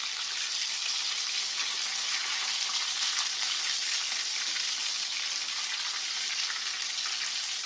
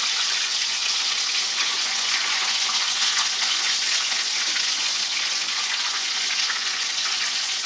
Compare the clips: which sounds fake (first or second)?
second